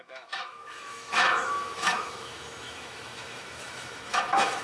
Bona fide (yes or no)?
no